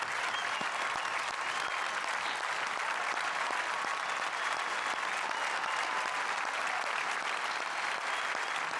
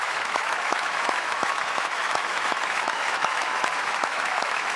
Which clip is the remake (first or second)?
second